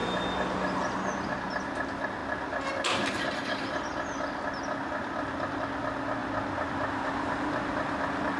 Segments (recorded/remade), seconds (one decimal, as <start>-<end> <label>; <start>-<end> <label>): 0.0-8.4 recorded